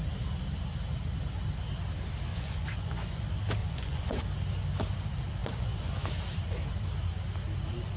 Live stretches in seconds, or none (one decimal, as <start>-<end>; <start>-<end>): 0.0-2.3; 3.2-3.6; 4.2-5.4; 5.9-8.0